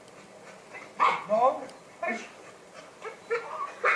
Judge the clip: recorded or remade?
recorded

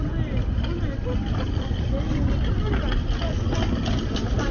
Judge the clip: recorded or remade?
recorded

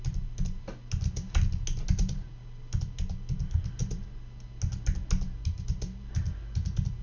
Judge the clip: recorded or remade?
recorded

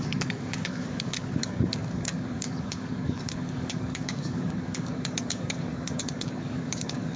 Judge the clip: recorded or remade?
remade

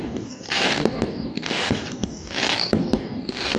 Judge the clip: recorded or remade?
remade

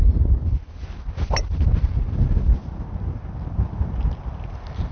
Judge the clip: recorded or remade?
recorded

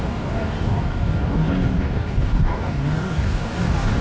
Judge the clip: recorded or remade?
remade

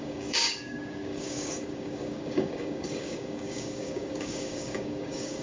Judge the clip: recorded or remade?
remade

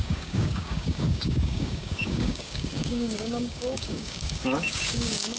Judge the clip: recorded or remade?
remade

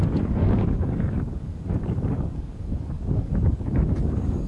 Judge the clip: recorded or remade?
remade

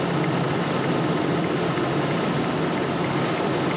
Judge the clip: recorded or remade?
recorded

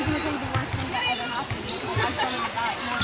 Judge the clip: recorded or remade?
recorded